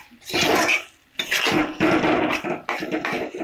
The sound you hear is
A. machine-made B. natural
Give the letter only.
B